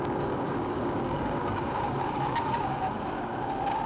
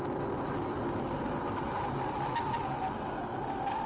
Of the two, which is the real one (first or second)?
second